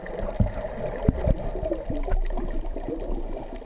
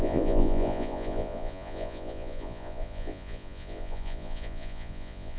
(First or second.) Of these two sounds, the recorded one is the first